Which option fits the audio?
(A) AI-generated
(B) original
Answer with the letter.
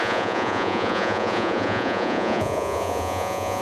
A